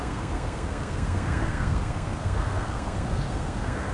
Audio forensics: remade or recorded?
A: remade